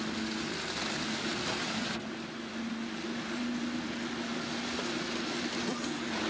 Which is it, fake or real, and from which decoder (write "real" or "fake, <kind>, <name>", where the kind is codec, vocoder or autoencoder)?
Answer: real